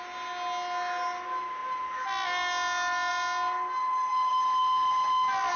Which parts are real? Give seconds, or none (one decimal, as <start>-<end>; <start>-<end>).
0.0-5.6